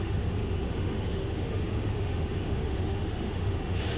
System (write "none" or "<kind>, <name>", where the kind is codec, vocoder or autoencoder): autoencoder, DAC-VAE